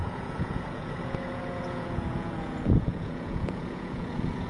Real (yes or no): no